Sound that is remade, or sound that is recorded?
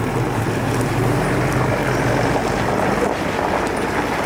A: recorded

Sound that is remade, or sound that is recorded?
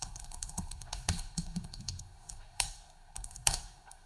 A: remade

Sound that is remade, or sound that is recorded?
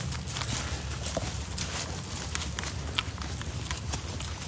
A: recorded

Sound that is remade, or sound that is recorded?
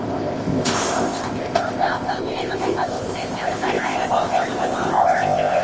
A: remade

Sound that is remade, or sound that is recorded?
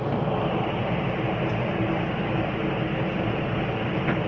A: recorded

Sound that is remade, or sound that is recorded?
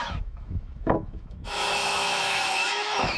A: remade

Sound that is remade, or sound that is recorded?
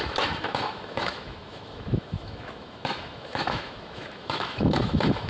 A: remade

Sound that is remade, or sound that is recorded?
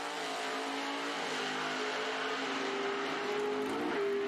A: recorded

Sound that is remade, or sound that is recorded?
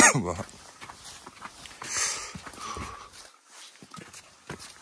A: recorded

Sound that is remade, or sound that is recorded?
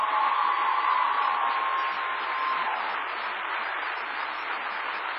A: recorded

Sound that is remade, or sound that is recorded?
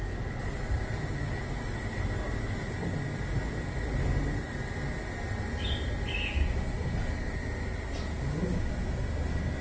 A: recorded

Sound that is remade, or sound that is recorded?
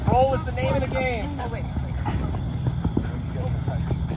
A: recorded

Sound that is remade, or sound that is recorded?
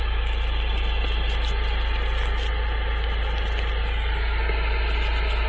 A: recorded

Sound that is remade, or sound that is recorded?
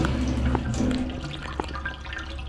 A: recorded